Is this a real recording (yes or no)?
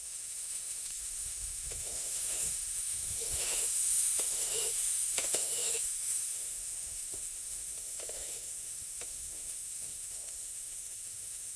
no